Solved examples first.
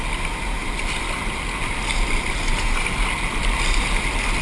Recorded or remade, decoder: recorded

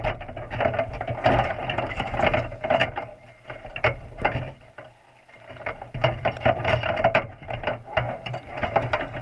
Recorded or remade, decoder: recorded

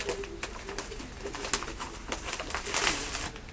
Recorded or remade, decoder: recorded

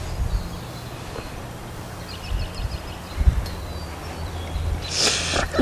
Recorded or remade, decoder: recorded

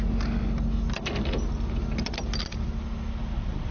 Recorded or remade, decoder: recorded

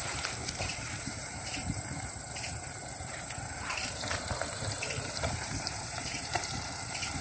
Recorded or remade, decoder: remade, vocoder, BigVGAN v2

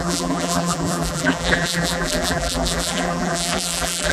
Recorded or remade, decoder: remade, vocoder, BigVGAN v2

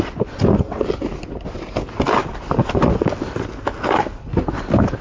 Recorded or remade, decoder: recorded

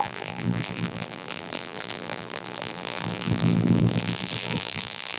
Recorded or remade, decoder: remade, vocoder, BigVGAN v2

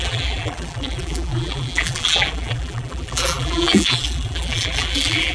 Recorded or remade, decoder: remade, vocoder, BigVGAN v2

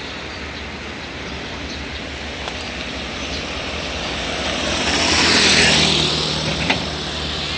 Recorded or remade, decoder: remade, vocoder, BigVGAN v2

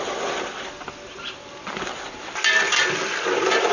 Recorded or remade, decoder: recorded